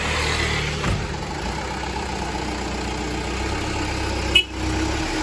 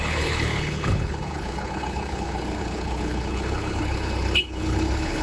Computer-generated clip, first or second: second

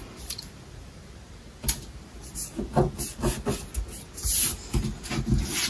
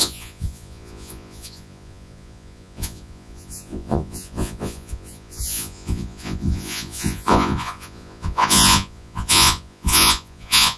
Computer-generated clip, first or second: second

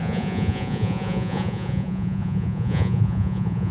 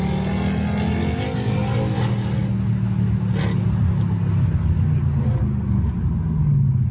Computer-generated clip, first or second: first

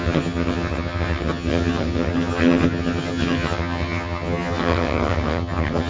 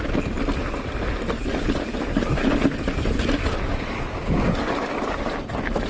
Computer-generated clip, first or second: first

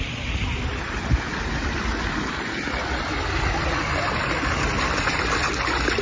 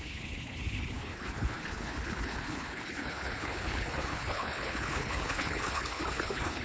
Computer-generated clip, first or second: second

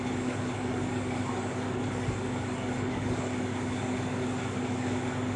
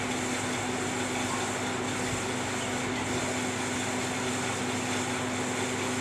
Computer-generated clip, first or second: first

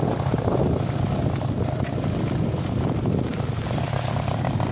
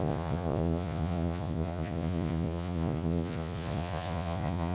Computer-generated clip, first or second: second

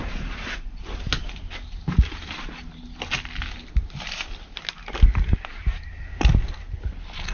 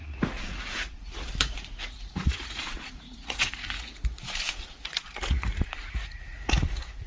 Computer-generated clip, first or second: second